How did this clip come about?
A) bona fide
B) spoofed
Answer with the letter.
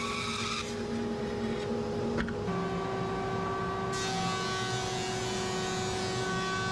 A